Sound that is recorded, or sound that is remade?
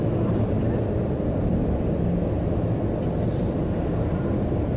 recorded